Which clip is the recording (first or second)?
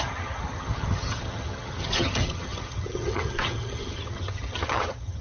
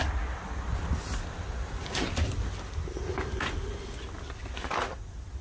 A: second